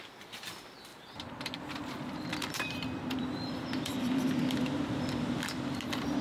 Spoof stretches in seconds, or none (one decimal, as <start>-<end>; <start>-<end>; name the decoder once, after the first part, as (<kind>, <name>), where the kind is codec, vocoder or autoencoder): 0.0-0.9 (vocoder, BigVGAN v2); 1.9-6.2